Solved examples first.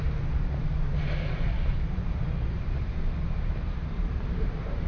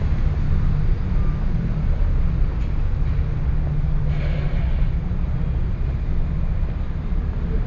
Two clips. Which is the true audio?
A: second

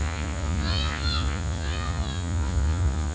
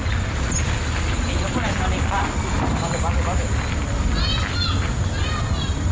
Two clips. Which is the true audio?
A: second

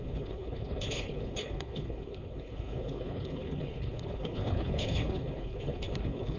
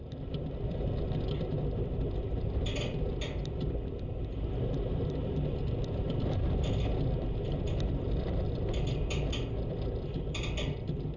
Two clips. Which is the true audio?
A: second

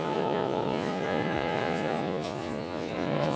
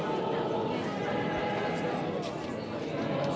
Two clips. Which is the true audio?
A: second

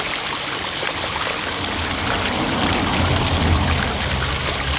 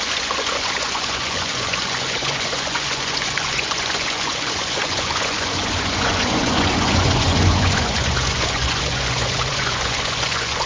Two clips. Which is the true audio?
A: first